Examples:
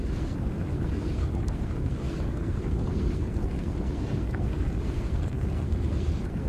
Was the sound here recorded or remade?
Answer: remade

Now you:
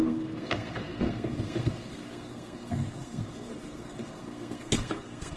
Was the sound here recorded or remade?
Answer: remade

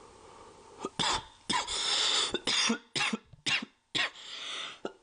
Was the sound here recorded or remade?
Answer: recorded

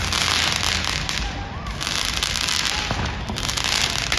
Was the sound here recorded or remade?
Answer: recorded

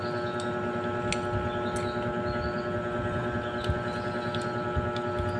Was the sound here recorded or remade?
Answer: recorded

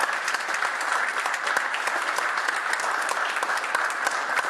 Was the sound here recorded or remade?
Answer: recorded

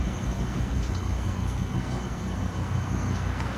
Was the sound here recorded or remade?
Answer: remade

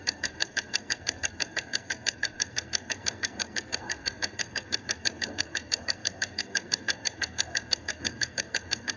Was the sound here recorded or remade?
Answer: remade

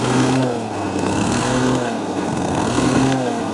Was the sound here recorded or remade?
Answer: remade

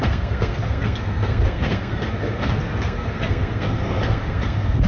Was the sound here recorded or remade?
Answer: remade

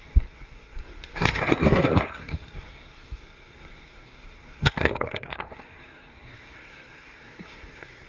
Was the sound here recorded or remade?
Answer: remade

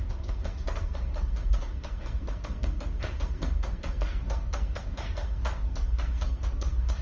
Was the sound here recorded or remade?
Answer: remade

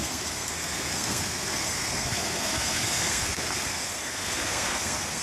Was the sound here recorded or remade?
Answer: remade